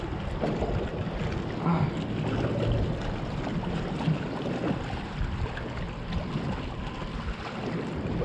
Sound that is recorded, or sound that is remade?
recorded